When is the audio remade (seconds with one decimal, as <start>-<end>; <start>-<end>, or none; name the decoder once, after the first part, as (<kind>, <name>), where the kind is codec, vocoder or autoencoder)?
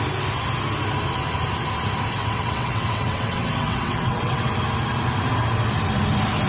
2.2-4.5 (vocoder, WaveNeXt)